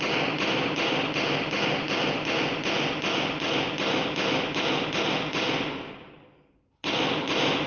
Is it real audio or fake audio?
real